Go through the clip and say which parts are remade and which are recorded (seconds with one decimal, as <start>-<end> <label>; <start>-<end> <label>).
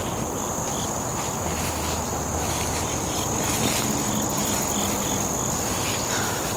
0.0-4.4 recorded; 4.4-4.9 remade; 4.9-6.6 recorded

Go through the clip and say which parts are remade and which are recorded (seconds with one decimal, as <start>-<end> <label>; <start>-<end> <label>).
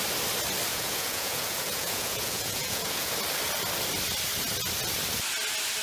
0.0-0.7 recorded; 0.7-3.1 remade; 3.1-5.8 recorded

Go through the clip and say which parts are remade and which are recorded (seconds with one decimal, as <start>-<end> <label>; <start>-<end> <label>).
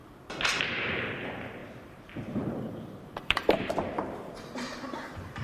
0.0-0.7 recorded; 0.7-5.4 remade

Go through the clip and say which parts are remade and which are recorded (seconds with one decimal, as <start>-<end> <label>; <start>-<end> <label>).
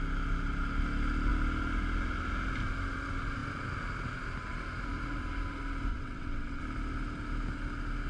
0.0-5.9 recorded; 5.9-6.6 remade; 6.6-8.1 recorded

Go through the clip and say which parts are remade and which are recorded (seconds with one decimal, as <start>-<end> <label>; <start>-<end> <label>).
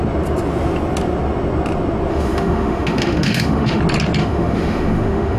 0.0-2.1 recorded; 2.1-3.8 remade; 3.8-4.2 recorded; 4.2-5.4 remade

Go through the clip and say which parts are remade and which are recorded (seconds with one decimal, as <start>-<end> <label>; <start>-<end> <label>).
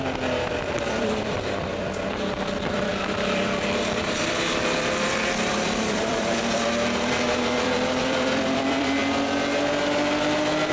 0.0-9.0 remade; 9.0-10.7 recorded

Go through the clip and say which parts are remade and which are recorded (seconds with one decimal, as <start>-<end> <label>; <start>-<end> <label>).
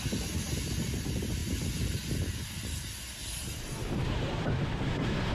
0.0-3.2 recorded; 3.2-4.5 remade; 4.5-5.3 recorded